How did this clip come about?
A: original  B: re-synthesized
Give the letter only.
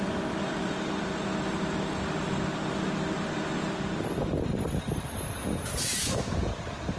A